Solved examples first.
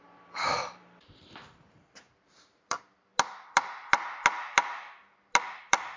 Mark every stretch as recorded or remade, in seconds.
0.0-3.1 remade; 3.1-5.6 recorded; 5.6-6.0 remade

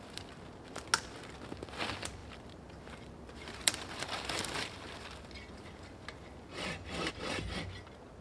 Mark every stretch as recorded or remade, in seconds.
0.0-2.2 recorded; 2.2-7.1 remade; 7.1-8.2 recorded

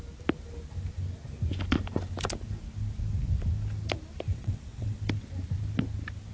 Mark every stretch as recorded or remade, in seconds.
0.0-4.3 recorded; 4.3-5.0 remade; 5.0-6.3 recorded